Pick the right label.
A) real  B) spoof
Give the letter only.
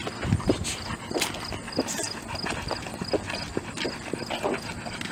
A